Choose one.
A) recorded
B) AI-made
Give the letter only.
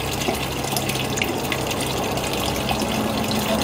A